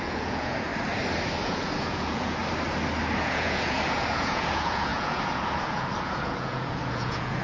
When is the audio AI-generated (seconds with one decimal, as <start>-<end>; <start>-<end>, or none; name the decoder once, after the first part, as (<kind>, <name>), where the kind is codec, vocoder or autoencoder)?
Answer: 0.0-0.7 (vocoder, Vocos); 1.4-2.4; 3.2-7.4